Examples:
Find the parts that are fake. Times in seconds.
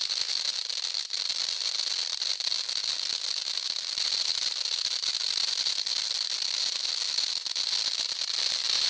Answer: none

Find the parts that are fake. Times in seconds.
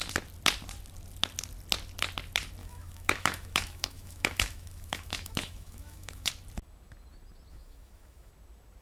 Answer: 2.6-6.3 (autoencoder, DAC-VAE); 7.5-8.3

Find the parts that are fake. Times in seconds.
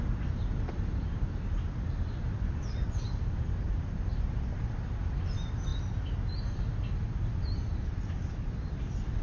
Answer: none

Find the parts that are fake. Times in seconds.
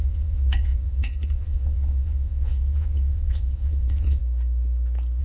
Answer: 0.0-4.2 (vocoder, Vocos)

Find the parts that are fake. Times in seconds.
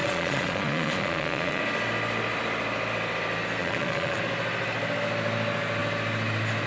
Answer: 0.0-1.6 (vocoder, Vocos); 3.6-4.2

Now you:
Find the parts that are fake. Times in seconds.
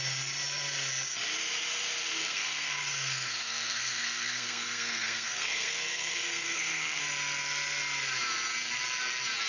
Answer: 2.2-7.0 (codec, SNAC)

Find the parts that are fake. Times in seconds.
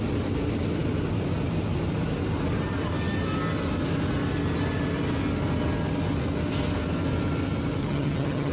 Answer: 7.8-8.5 (vocoder, HiFi-GAN)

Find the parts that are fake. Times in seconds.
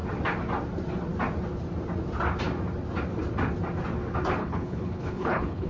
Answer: 4.4-5.7 (codec, HILCodec)